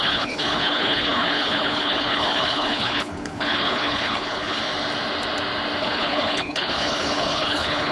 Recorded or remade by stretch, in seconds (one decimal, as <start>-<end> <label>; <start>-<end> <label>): 0.0-4.6 remade; 4.6-5.8 recorded; 5.8-7.9 remade